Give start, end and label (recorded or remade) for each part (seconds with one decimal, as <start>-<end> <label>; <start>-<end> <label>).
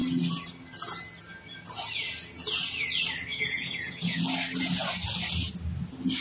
0.0-3.3 recorded; 3.3-4.2 remade; 4.2-6.2 recorded